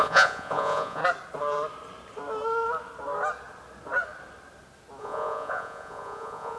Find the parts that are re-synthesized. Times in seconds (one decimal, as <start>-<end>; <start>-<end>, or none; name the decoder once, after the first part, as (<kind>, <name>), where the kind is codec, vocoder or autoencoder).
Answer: 0.0-1.0 (vocoder, Vocos); 5.0-6.6